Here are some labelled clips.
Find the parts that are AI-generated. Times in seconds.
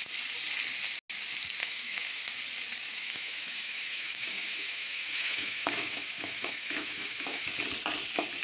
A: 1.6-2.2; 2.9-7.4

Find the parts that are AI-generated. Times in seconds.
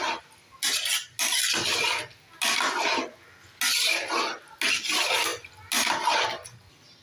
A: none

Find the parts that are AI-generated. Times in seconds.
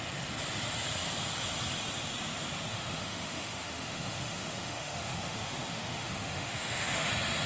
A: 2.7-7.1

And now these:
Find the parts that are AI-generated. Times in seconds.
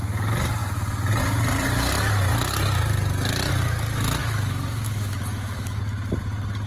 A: 4.2-5.8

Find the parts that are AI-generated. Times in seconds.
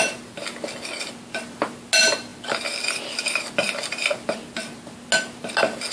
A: none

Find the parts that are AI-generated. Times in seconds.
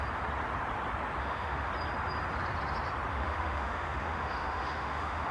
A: 1.2-1.7; 3.1-5.3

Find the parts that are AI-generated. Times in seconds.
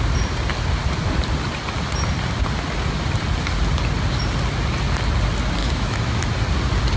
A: 5.6-6.2